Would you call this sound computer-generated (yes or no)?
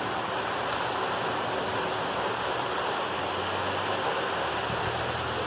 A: no